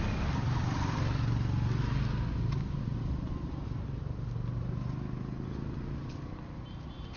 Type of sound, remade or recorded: recorded